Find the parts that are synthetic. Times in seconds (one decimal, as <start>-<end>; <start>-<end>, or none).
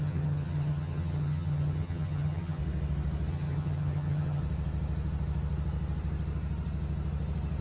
0.0-2.6; 3.3-4.4